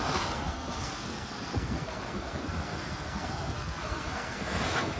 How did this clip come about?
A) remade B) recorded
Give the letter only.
A